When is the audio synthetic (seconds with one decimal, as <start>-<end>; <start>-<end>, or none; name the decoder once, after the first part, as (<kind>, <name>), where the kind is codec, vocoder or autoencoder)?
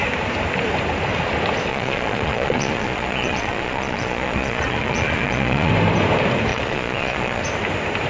1.7-5.7 (vocoder, Vocos); 6.5-7.4